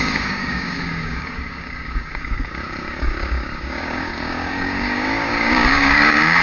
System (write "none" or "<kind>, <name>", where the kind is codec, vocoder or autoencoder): codec, DAC